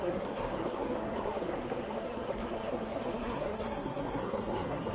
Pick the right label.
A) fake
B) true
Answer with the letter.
A